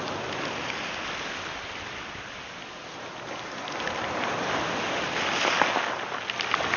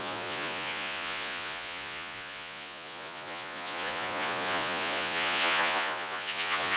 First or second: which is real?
first